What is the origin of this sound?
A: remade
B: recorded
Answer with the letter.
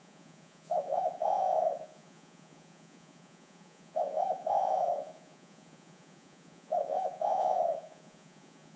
A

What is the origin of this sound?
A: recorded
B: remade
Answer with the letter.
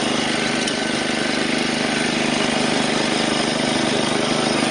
A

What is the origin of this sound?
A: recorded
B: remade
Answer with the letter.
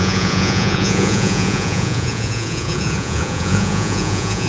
B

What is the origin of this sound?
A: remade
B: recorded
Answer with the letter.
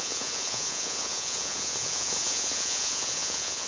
A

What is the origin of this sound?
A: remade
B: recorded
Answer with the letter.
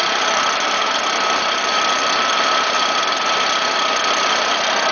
A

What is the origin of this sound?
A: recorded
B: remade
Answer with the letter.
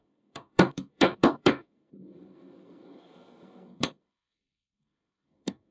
B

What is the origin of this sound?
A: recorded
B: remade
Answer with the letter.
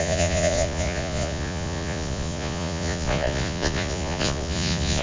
B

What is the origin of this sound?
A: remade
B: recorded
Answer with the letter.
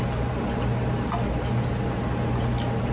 B